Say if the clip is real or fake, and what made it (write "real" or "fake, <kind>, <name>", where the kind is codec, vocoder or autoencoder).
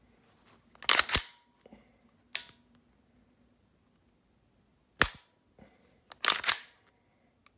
real